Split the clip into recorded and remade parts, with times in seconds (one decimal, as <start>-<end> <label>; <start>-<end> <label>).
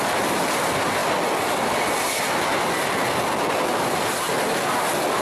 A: 0.0-5.2 recorded